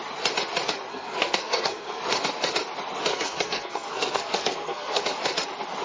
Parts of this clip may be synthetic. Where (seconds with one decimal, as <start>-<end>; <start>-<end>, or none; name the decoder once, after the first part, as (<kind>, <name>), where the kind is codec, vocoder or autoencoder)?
0.9-2.0 (codec, SNAC); 3.1-5.0